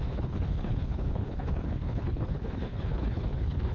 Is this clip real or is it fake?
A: fake